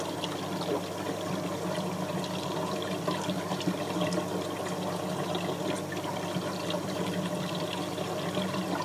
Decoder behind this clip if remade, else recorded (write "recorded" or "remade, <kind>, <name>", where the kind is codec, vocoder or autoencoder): recorded